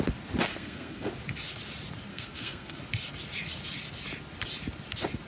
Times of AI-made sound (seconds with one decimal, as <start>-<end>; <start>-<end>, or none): 0.5-1.1; 2.1-2.8

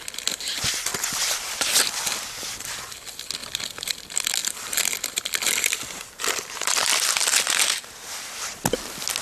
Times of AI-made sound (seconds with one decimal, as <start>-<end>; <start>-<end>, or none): 0.9-2.8; 3.4-3.9; 4.4-8.6

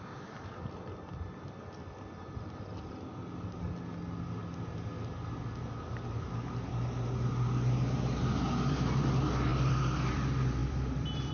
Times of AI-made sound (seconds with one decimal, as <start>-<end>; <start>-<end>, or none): 9.5-10.1; 10.6-11.3

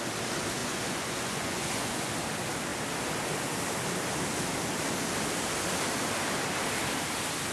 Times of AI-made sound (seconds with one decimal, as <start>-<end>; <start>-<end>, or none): 0.6-2.1

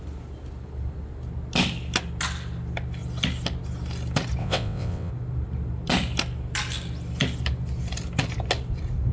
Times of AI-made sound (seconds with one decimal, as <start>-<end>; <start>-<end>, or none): 4.4-5.1

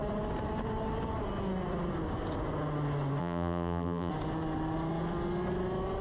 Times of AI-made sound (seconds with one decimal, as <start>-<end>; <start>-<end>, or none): 3.2-4.1

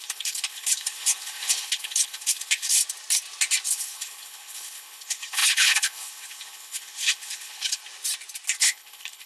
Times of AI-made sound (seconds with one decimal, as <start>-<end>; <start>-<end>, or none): 0.0-2.8; 3.7-7.8; 8.6-9.3

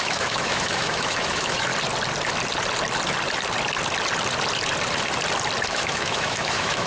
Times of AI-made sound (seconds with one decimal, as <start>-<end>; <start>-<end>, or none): 0.0-1.7; 5.7-6.9